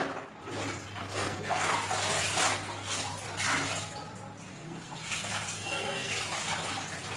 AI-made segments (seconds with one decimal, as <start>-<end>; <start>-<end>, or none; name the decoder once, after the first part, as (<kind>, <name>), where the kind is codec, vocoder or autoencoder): 1.0-1.7 (codec, SNAC); 2.5-3.0; 4.5-6.1